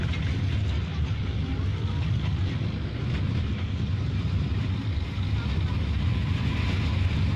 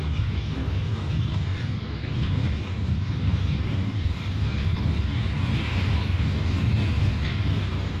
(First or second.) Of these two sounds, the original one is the first